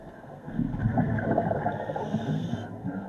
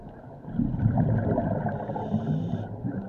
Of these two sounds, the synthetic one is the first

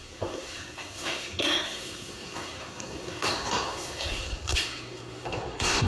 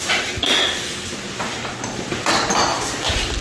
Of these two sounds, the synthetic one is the first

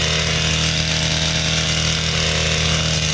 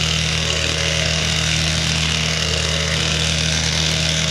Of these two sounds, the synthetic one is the second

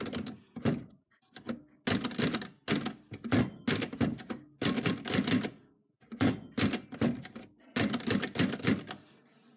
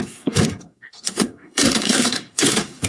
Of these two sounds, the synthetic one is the second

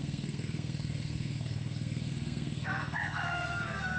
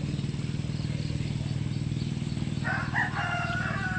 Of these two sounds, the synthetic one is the first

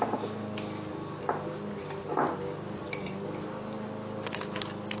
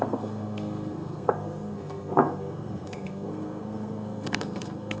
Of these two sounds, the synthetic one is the second